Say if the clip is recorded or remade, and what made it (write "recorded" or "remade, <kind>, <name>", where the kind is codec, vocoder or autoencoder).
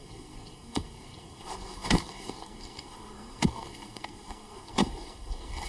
remade, codec, SNAC